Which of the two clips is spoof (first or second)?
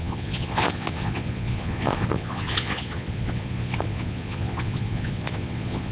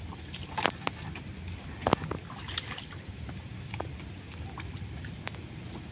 first